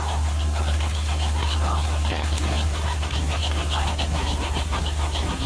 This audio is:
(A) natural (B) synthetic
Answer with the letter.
B